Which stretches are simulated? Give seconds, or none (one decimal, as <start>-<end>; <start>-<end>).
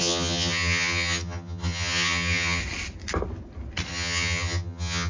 0.0-2.6; 3.9-5.1